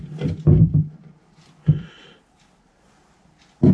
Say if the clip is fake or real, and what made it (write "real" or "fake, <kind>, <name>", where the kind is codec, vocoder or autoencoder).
real